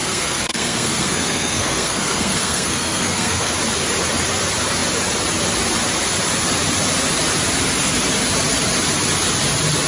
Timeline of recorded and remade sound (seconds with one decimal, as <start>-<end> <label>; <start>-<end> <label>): 0.0-3.5 remade; 3.5-9.9 recorded